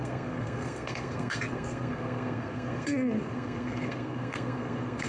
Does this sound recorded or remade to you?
remade